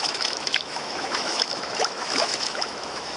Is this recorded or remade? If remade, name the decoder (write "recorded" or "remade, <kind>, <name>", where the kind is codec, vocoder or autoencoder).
remade, autoencoder, DAC-VAE